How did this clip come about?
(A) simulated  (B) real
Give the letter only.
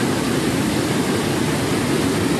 B